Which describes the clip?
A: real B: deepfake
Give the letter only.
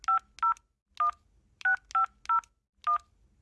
A